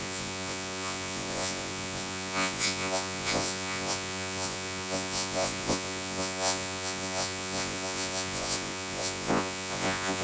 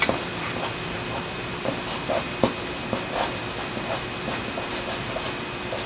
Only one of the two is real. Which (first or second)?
second